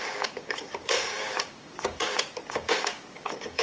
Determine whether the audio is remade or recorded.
remade